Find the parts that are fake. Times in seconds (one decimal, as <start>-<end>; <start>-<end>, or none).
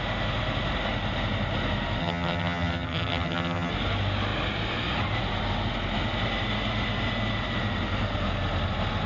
2.0-3.7